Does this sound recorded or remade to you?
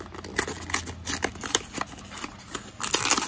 recorded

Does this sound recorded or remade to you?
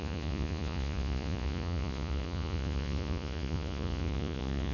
remade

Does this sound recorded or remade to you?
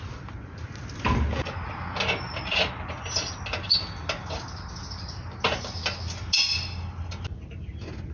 recorded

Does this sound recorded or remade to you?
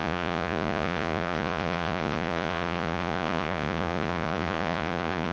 remade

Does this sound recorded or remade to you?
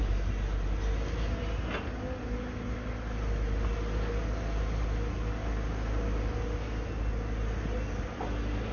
recorded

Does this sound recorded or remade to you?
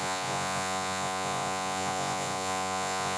remade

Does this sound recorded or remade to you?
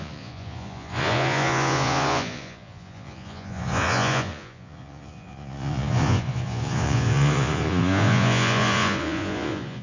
remade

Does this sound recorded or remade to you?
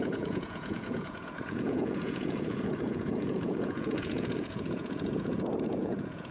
remade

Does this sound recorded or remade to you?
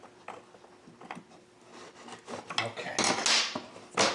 recorded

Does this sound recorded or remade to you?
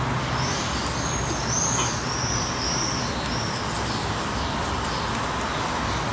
recorded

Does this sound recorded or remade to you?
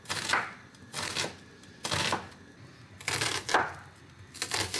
recorded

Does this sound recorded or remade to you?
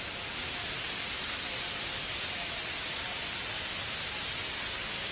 recorded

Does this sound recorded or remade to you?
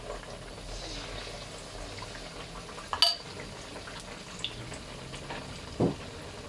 recorded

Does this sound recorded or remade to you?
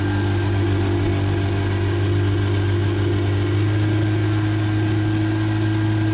recorded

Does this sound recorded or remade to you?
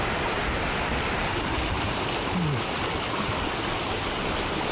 recorded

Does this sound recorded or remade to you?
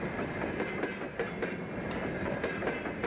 recorded